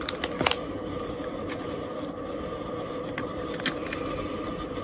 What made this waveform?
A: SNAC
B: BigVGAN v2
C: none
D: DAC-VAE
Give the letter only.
C